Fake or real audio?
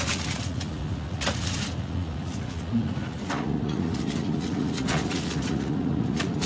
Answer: fake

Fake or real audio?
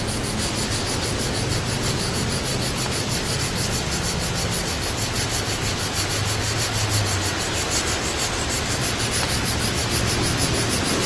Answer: real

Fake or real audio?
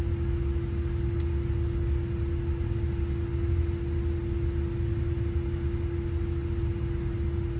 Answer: real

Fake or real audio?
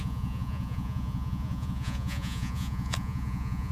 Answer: fake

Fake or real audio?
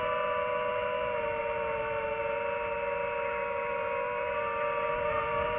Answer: real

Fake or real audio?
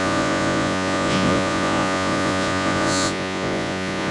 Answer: fake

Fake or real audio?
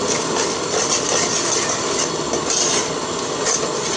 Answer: real